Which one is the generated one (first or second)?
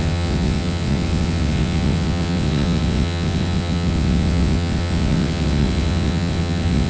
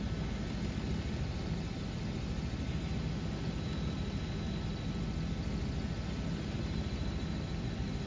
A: first